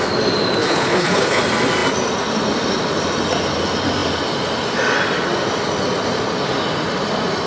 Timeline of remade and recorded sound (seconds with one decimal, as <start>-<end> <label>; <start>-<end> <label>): 0.0-0.6 recorded; 0.6-1.4 remade; 1.4-7.5 recorded